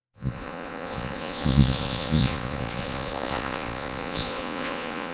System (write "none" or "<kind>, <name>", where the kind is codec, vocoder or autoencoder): vocoder, Vocos